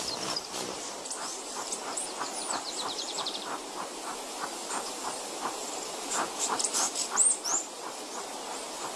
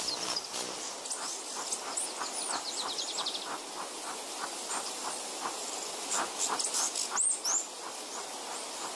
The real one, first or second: second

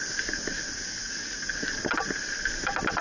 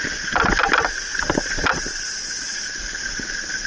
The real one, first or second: first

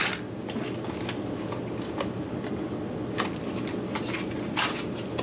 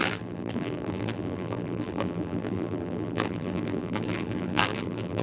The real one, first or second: first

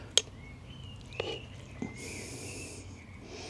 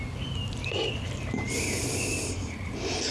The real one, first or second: first